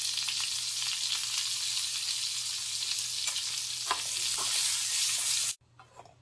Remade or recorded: recorded